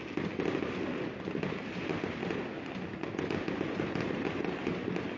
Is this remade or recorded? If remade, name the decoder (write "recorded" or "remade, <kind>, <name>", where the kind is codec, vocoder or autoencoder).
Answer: recorded